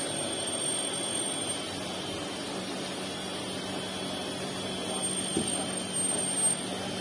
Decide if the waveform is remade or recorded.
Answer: recorded